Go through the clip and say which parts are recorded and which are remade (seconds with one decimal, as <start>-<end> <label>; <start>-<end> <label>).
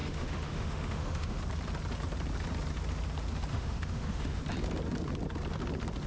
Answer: 0.0-1.4 remade; 1.4-3.5 recorded; 3.5-4.4 remade; 4.4-6.1 recorded